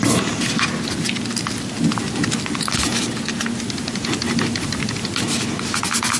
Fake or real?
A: real